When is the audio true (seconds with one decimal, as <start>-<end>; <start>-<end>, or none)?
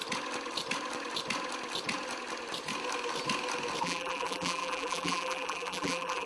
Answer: 0.0-3.8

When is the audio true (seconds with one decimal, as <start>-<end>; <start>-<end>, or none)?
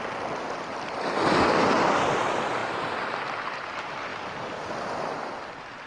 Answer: 0.0-2.6; 3.2-4.1; 4.7-5.9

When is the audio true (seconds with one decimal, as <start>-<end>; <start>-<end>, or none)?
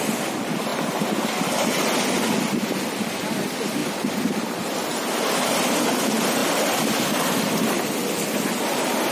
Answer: 0.0-3.8; 4.9-6.4; 7.8-9.1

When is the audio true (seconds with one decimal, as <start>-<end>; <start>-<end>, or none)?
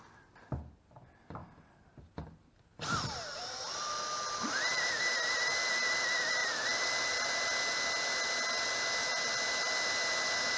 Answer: 0.0-1.4; 5.0-6.4; 7.4-10.6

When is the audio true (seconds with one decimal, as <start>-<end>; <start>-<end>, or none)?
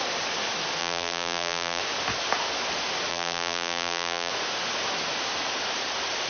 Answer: 0.0-0.8; 1.8-3.1; 4.3-6.3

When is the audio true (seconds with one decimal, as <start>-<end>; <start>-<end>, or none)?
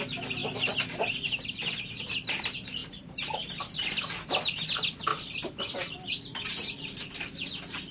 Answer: 0.0-5.1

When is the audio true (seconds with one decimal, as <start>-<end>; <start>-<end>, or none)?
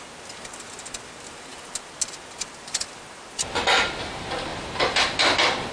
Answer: 0.0-5.7